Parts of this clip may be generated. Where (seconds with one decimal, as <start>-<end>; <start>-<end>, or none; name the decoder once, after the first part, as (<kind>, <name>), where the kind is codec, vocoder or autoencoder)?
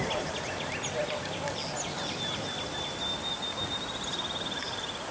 none